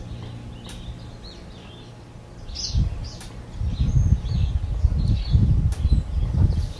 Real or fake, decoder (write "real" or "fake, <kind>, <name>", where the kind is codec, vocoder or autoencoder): real